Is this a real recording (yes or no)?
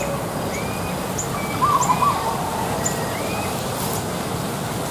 yes